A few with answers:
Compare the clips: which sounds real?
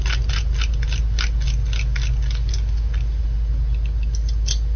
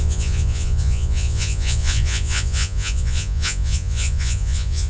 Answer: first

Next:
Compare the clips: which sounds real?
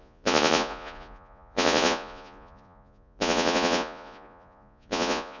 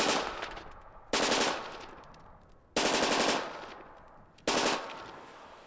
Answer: second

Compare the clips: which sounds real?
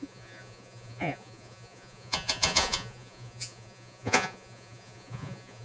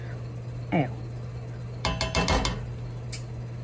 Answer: second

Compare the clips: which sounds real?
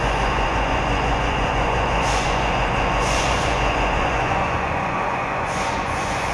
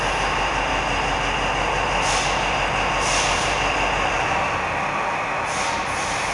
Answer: second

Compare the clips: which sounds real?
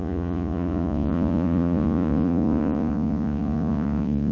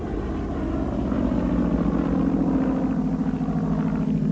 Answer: second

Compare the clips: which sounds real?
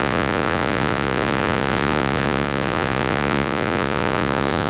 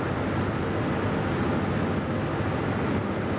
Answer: second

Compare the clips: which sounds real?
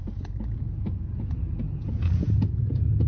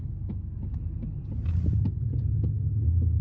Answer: second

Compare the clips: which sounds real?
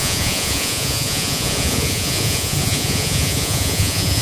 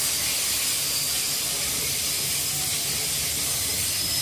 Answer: second